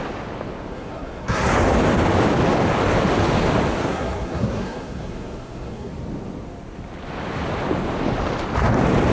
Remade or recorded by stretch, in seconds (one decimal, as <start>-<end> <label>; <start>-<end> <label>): 0.0-0.7 recorded; 0.7-1.5 remade; 1.5-3.8 recorded; 3.8-5.9 remade; 5.9-9.1 recorded